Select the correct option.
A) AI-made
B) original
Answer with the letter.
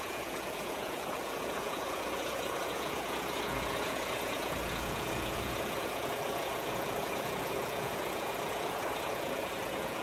A